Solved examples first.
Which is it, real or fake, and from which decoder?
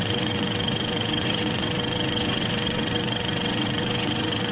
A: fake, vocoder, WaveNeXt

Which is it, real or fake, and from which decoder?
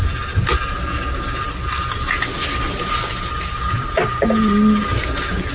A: real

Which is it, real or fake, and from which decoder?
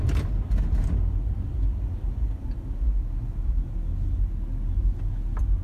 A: real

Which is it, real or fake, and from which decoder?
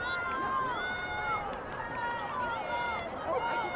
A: real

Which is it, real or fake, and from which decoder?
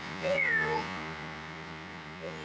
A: fake, vocoder, Vocos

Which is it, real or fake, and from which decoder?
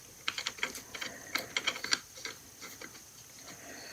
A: real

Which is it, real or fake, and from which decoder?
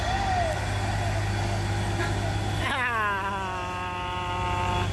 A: real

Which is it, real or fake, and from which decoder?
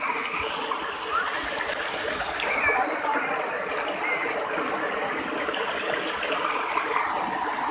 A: real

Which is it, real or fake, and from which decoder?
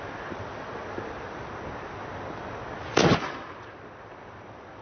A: real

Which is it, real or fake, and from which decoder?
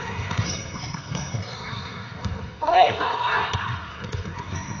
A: fake, codec, SNAC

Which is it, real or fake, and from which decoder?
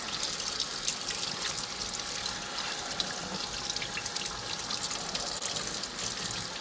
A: real